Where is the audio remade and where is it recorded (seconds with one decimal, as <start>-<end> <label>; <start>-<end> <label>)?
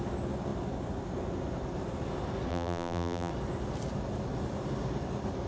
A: 0.0-2.5 recorded; 2.5-3.3 remade; 3.3-5.5 recorded